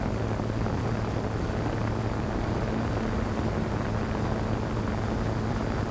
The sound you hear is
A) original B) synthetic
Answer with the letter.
A